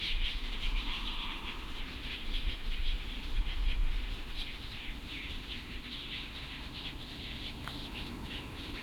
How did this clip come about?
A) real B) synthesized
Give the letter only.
B